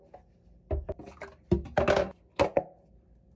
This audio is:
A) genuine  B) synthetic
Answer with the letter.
A